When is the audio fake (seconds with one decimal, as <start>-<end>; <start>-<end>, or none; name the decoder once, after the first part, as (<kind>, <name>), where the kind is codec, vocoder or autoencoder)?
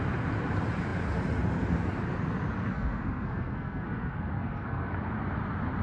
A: 2.6-4.9 (codec, SNAC)